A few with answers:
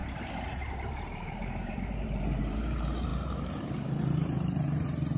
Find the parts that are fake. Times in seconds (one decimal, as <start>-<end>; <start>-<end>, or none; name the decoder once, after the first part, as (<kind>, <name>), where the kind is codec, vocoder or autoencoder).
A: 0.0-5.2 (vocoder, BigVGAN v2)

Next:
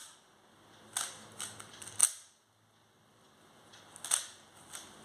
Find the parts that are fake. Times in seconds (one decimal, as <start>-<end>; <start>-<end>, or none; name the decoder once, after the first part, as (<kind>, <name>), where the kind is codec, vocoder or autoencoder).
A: none

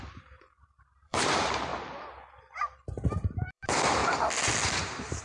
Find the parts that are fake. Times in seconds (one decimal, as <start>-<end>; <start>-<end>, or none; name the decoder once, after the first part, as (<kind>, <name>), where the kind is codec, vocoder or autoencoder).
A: 0.0-1.7 (vocoder, BigVGAN v2); 2.9-4.0; 4.8-5.2

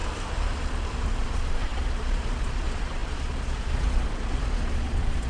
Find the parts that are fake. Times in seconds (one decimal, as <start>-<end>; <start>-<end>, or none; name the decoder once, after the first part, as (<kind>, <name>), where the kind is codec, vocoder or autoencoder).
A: 1.2-5.3 (vocoder, Vocos)

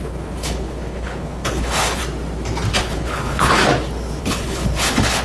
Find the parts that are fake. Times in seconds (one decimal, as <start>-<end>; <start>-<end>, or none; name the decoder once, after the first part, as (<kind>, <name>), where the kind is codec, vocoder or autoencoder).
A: 0.0-2.0 (codec, HILCodec); 2.8-3.6; 4.2-5.2